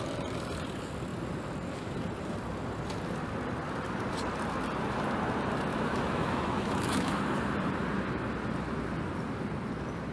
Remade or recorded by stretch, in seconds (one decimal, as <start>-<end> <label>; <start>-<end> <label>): 0.0-5.7 recorded; 5.7-7.2 remade; 7.2-10.1 recorded